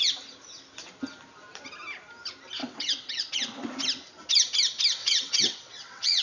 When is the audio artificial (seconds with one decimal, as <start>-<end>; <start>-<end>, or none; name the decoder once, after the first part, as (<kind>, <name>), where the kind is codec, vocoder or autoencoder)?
2.6-3.3 (vocoder, WaveNeXt); 5.0-6.2